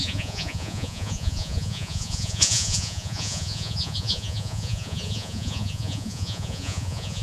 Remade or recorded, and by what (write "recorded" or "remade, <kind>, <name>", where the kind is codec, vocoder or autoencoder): remade, vocoder, Vocos